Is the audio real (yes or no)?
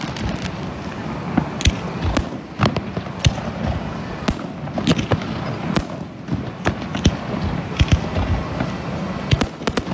yes